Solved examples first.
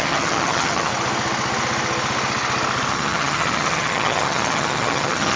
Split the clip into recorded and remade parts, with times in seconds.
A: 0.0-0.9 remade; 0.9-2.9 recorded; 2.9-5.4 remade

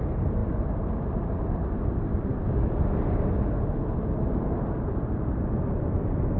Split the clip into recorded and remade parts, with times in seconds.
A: 0.0-6.4 recorded